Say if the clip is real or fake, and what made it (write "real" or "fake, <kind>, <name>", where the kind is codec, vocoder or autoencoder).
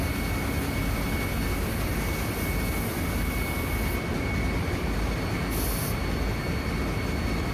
real